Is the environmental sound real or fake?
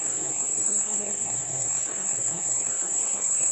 fake